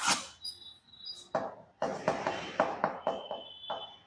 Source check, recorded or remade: recorded